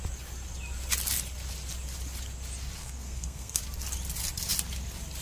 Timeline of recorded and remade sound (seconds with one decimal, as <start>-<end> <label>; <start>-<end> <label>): 0.0-2.8 recorded; 2.8-3.6 remade; 3.6-5.2 recorded